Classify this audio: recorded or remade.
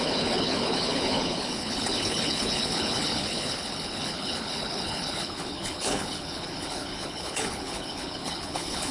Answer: remade